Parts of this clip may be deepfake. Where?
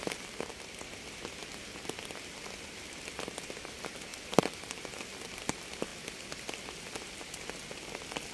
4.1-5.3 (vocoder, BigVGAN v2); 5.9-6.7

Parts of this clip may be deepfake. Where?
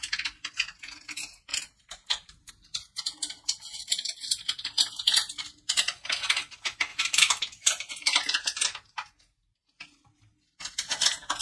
1.5-2.5 (vocoder, BigVGAN v2); 6.9-9.1